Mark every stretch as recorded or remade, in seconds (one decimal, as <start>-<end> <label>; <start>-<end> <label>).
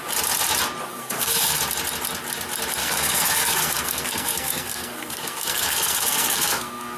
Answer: 0.0-0.9 recorded; 0.9-1.6 remade; 1.6-2.8 recorded; 2.8-7.0 remade